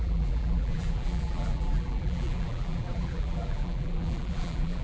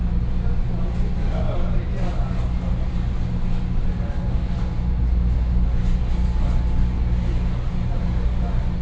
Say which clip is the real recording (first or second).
second